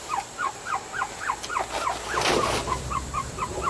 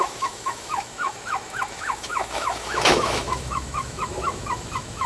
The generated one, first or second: second